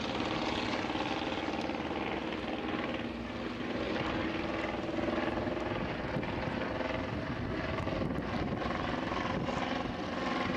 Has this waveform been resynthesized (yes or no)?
no